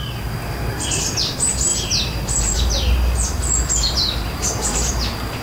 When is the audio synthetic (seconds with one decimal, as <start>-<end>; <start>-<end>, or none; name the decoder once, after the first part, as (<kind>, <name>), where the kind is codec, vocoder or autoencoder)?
none